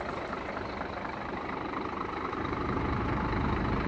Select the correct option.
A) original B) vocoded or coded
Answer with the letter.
B